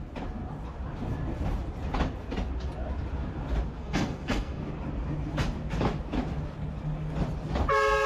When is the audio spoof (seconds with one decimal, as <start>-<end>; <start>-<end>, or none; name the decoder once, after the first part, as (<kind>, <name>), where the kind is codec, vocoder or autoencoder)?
3.8-4.6 (codec, SNAC)